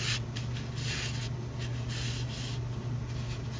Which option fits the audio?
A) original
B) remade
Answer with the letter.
A